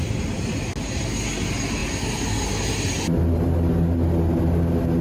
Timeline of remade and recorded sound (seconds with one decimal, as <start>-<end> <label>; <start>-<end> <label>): 0.0-5.0 recorded